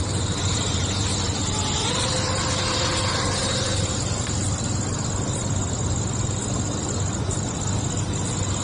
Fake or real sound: real